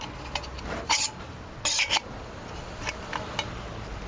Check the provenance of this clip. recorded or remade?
recorded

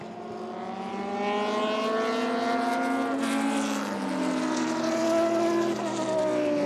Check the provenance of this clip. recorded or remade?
recorded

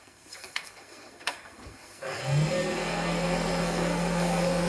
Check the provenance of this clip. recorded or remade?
remade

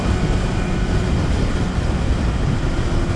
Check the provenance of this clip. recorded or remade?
recorded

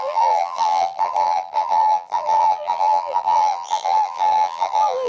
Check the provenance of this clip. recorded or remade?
remade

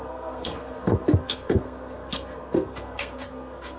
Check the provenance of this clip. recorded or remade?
remade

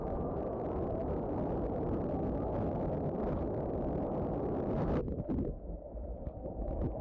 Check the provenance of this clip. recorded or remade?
recorded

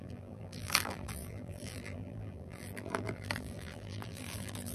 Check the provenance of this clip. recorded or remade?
remade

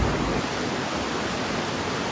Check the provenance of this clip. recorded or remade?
recorded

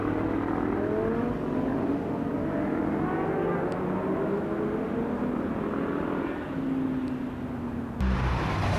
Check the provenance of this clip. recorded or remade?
recorded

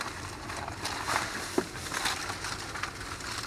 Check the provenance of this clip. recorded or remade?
recorded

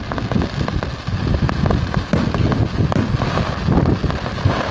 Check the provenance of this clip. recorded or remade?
recorded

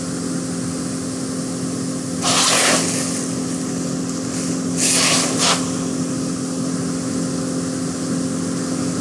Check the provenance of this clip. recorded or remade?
recorded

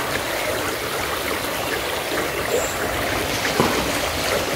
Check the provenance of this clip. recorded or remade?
recorded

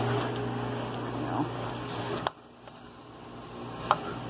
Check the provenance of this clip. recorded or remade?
recorded